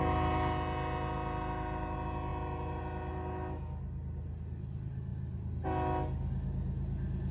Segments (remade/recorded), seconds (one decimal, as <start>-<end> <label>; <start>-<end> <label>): 0.0-7.3 recorded

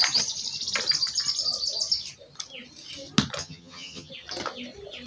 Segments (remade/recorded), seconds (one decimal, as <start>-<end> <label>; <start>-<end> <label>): 0.0-3.4 recorded; 3.4-4.1 remade; 4.1-5.1 recorded

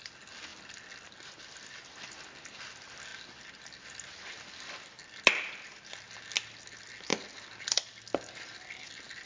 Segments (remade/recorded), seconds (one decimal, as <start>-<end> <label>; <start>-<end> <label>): 0.0-7.1 recorded; 7.1-8.8 remade; 8.8-9.3 recorded

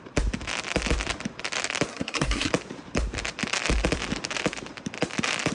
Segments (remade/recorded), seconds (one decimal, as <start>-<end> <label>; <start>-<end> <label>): 0.0-1.9 recorded; 1.9-2.5 remade; 2.5-5.5 recorded

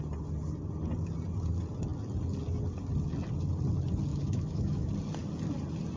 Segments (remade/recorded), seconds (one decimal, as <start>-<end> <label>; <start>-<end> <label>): 0.0-4.1 recorded; 4.1-4.9 remade; 4.9-6.0 recorded

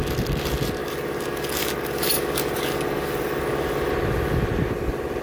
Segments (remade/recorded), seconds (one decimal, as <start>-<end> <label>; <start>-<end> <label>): 0.0-0.8 recorded; 0.8-3.9 remade; 3.9-5.2 recorded

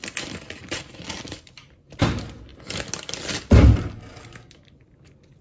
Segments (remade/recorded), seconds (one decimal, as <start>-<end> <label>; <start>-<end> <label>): 0.0-5.4 recorded